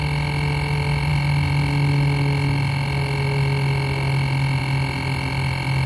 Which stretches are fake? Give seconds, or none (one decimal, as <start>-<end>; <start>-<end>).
none